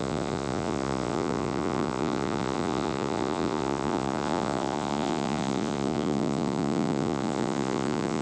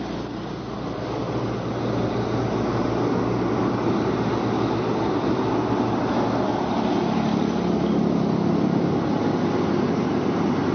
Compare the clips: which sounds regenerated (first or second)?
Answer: first